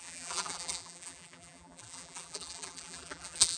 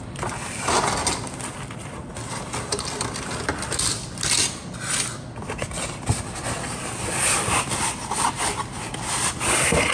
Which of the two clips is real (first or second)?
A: second